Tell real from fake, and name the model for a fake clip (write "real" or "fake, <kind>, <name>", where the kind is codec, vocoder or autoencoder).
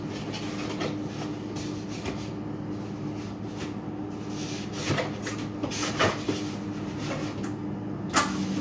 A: real